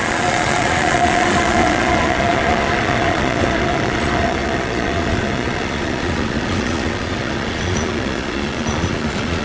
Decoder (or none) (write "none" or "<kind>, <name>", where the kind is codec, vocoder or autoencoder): vocoder, Vocos